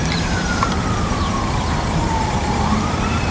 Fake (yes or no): yes